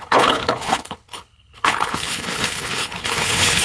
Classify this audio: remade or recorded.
remade